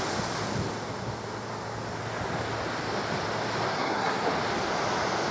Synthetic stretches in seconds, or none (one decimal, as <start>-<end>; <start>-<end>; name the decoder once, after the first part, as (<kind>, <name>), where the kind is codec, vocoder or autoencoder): 3.7-4.3 (codec, SNAC)

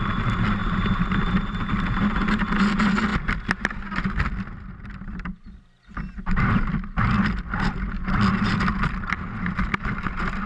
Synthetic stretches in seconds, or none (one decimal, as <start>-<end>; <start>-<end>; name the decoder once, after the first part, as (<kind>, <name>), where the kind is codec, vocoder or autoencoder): none